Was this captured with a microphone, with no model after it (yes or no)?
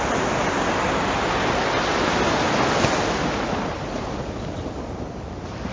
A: yes